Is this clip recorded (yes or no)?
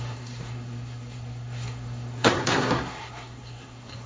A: no